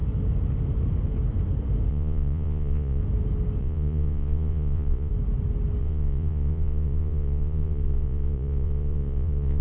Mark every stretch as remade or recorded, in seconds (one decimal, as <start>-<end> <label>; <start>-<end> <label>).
0.0-1.9 recorded; 1.9-3.0 remade; 3.0-3.6 recorded; 3.6-5.1 remade; 5.1-5.8 recorded; 5.8-9.6 remade